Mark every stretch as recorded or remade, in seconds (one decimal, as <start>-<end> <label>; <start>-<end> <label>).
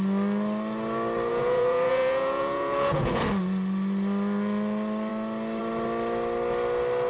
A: 0.0-1.3 recorded; 1.3-3.2 remade; 3.2-7.1 recorded